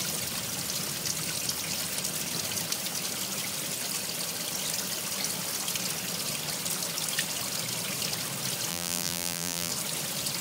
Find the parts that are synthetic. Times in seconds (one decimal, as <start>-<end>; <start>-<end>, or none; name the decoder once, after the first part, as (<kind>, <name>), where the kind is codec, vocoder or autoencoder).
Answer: 8.7-9.7 (vocoder, BigVGAN v2)

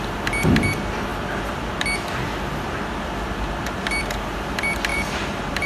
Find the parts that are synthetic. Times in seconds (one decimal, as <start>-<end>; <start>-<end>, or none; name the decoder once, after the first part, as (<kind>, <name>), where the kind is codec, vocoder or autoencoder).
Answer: 4.9-5.7 (vocoder, BigVGAN v2)

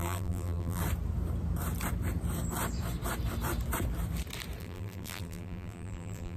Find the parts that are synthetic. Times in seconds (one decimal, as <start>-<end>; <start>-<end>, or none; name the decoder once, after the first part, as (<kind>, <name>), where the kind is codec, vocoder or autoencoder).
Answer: 0.0-0.8 (vocoder, BigVGAN v2); 4.6-6.4

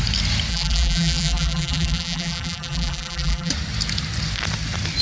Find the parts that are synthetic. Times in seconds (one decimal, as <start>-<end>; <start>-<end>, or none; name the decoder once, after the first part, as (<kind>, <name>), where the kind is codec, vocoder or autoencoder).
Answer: 0.5-3.5 (vocoder, BigVGAN v2)